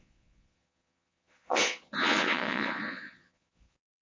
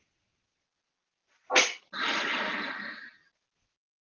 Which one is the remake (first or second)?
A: first